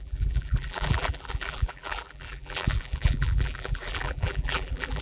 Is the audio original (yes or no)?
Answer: no